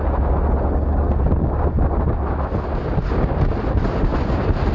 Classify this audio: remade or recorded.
recorded